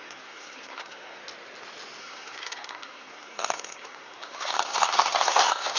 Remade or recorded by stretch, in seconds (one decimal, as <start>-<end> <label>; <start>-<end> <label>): 0.0-1.2 remade; 1.2-2.0 recorded; 2.0-5.8 remade